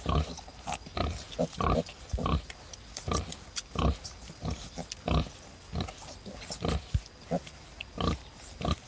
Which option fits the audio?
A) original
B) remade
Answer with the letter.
A